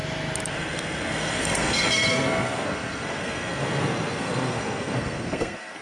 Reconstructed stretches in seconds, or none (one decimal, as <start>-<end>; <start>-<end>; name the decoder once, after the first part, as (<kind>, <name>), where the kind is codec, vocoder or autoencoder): 0.5-5.8 (codec, SNAC)

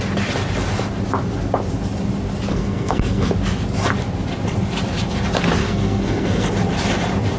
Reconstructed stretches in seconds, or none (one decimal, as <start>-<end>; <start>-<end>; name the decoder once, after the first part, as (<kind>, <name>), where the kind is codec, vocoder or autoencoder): 2.5-3.3 (codec, SNAC); 5.6-6.5

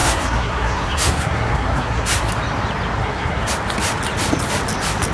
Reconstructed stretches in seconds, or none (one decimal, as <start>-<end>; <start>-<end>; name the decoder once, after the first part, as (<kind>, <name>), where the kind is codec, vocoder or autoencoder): 0.0-2.3 (codec, SNAC); 3.0-3.5

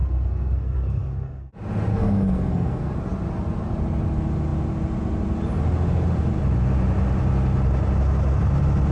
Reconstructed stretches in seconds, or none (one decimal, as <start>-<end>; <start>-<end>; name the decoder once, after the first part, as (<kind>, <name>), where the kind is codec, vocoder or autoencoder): 0.0-1.5 (codec, SNAC); 1.9-2.9

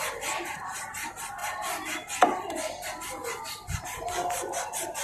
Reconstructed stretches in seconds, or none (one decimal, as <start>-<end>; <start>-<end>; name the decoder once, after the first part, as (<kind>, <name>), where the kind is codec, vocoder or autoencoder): none